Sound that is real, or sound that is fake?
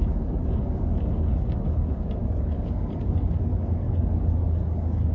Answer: fake